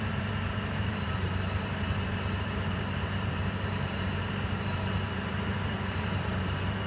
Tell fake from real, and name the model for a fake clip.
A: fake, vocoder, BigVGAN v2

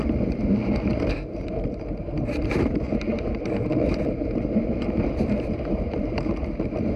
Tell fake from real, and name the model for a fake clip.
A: fake, vocoder, BigVGAN v2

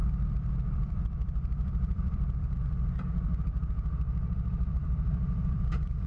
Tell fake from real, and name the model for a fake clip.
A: fake, vocoder, BigVGAN v2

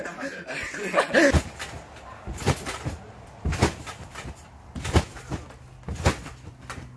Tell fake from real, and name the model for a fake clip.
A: real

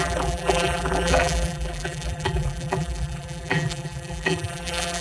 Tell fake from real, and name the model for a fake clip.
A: fake, vocoder, BigVGAN v2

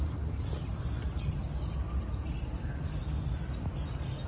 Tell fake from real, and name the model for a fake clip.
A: real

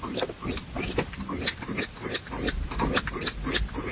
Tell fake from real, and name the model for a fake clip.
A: fake, vocoder, BigVGAN v2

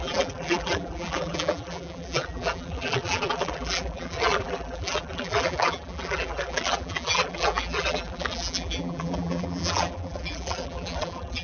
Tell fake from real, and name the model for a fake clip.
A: fake, vocoder, BigVGAN v2